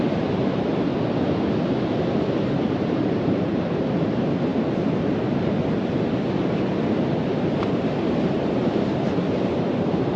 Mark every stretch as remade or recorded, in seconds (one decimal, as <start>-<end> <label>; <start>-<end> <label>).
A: 0.0-0.9 remade; 0.9-2.2 recorded; 2.2-4.5 remade; 4.5-5.6 recorded; 5.6-10.2 remade

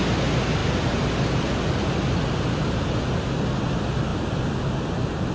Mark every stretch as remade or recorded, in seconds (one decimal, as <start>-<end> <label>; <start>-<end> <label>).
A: 0.0-5.3 recorded